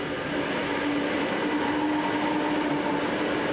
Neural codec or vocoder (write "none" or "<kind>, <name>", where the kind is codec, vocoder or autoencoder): none